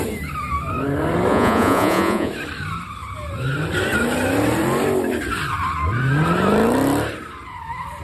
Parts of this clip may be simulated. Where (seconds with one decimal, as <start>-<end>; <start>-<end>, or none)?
1.3-2.3